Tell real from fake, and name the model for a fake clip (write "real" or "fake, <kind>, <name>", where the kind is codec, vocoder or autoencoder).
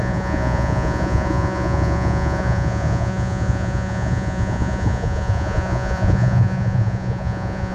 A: fake, vocoder, Vocos